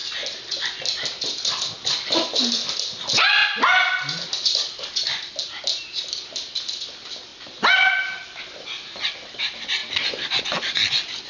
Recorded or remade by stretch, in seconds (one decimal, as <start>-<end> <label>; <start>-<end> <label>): 0.0-11.3 recorded